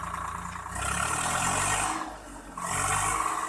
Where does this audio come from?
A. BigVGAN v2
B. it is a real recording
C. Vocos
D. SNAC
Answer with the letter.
B